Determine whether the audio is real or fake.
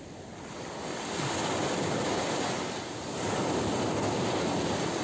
real